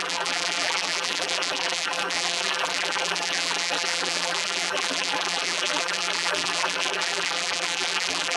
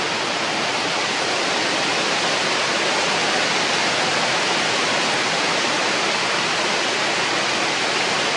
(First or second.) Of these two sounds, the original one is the second